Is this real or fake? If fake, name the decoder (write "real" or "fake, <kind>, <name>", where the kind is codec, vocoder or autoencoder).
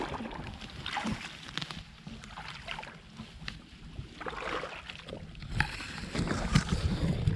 real